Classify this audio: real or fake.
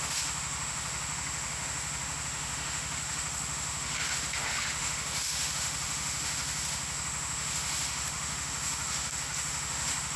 fake